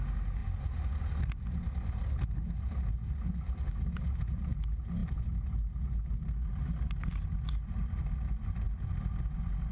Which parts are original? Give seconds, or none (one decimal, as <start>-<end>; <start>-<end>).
0.0-9.7